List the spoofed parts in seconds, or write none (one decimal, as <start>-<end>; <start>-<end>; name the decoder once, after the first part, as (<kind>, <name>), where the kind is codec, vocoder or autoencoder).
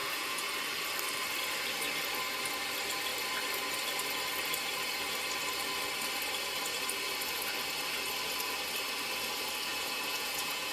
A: 0.0-0.5 (vocoder, Vocos); 9.7-10.7